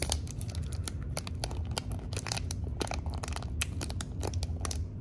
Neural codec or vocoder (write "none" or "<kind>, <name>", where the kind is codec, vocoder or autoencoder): none